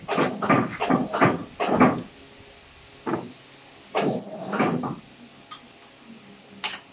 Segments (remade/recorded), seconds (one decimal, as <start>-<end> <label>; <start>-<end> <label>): 0.0-6.9 recorded